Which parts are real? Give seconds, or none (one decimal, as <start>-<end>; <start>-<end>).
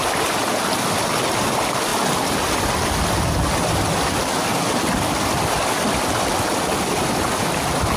0.0-8.0